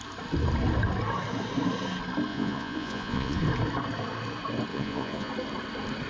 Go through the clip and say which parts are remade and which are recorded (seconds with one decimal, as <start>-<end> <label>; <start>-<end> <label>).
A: 0.0-2.3 recorded; 2.3-3.4 remade; 3.4-4.7 recorded; 4.7-5.3 remade; 5.3-6.1 recorded